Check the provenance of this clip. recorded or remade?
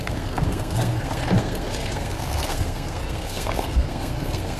remade